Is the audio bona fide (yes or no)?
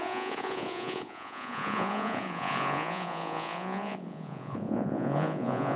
no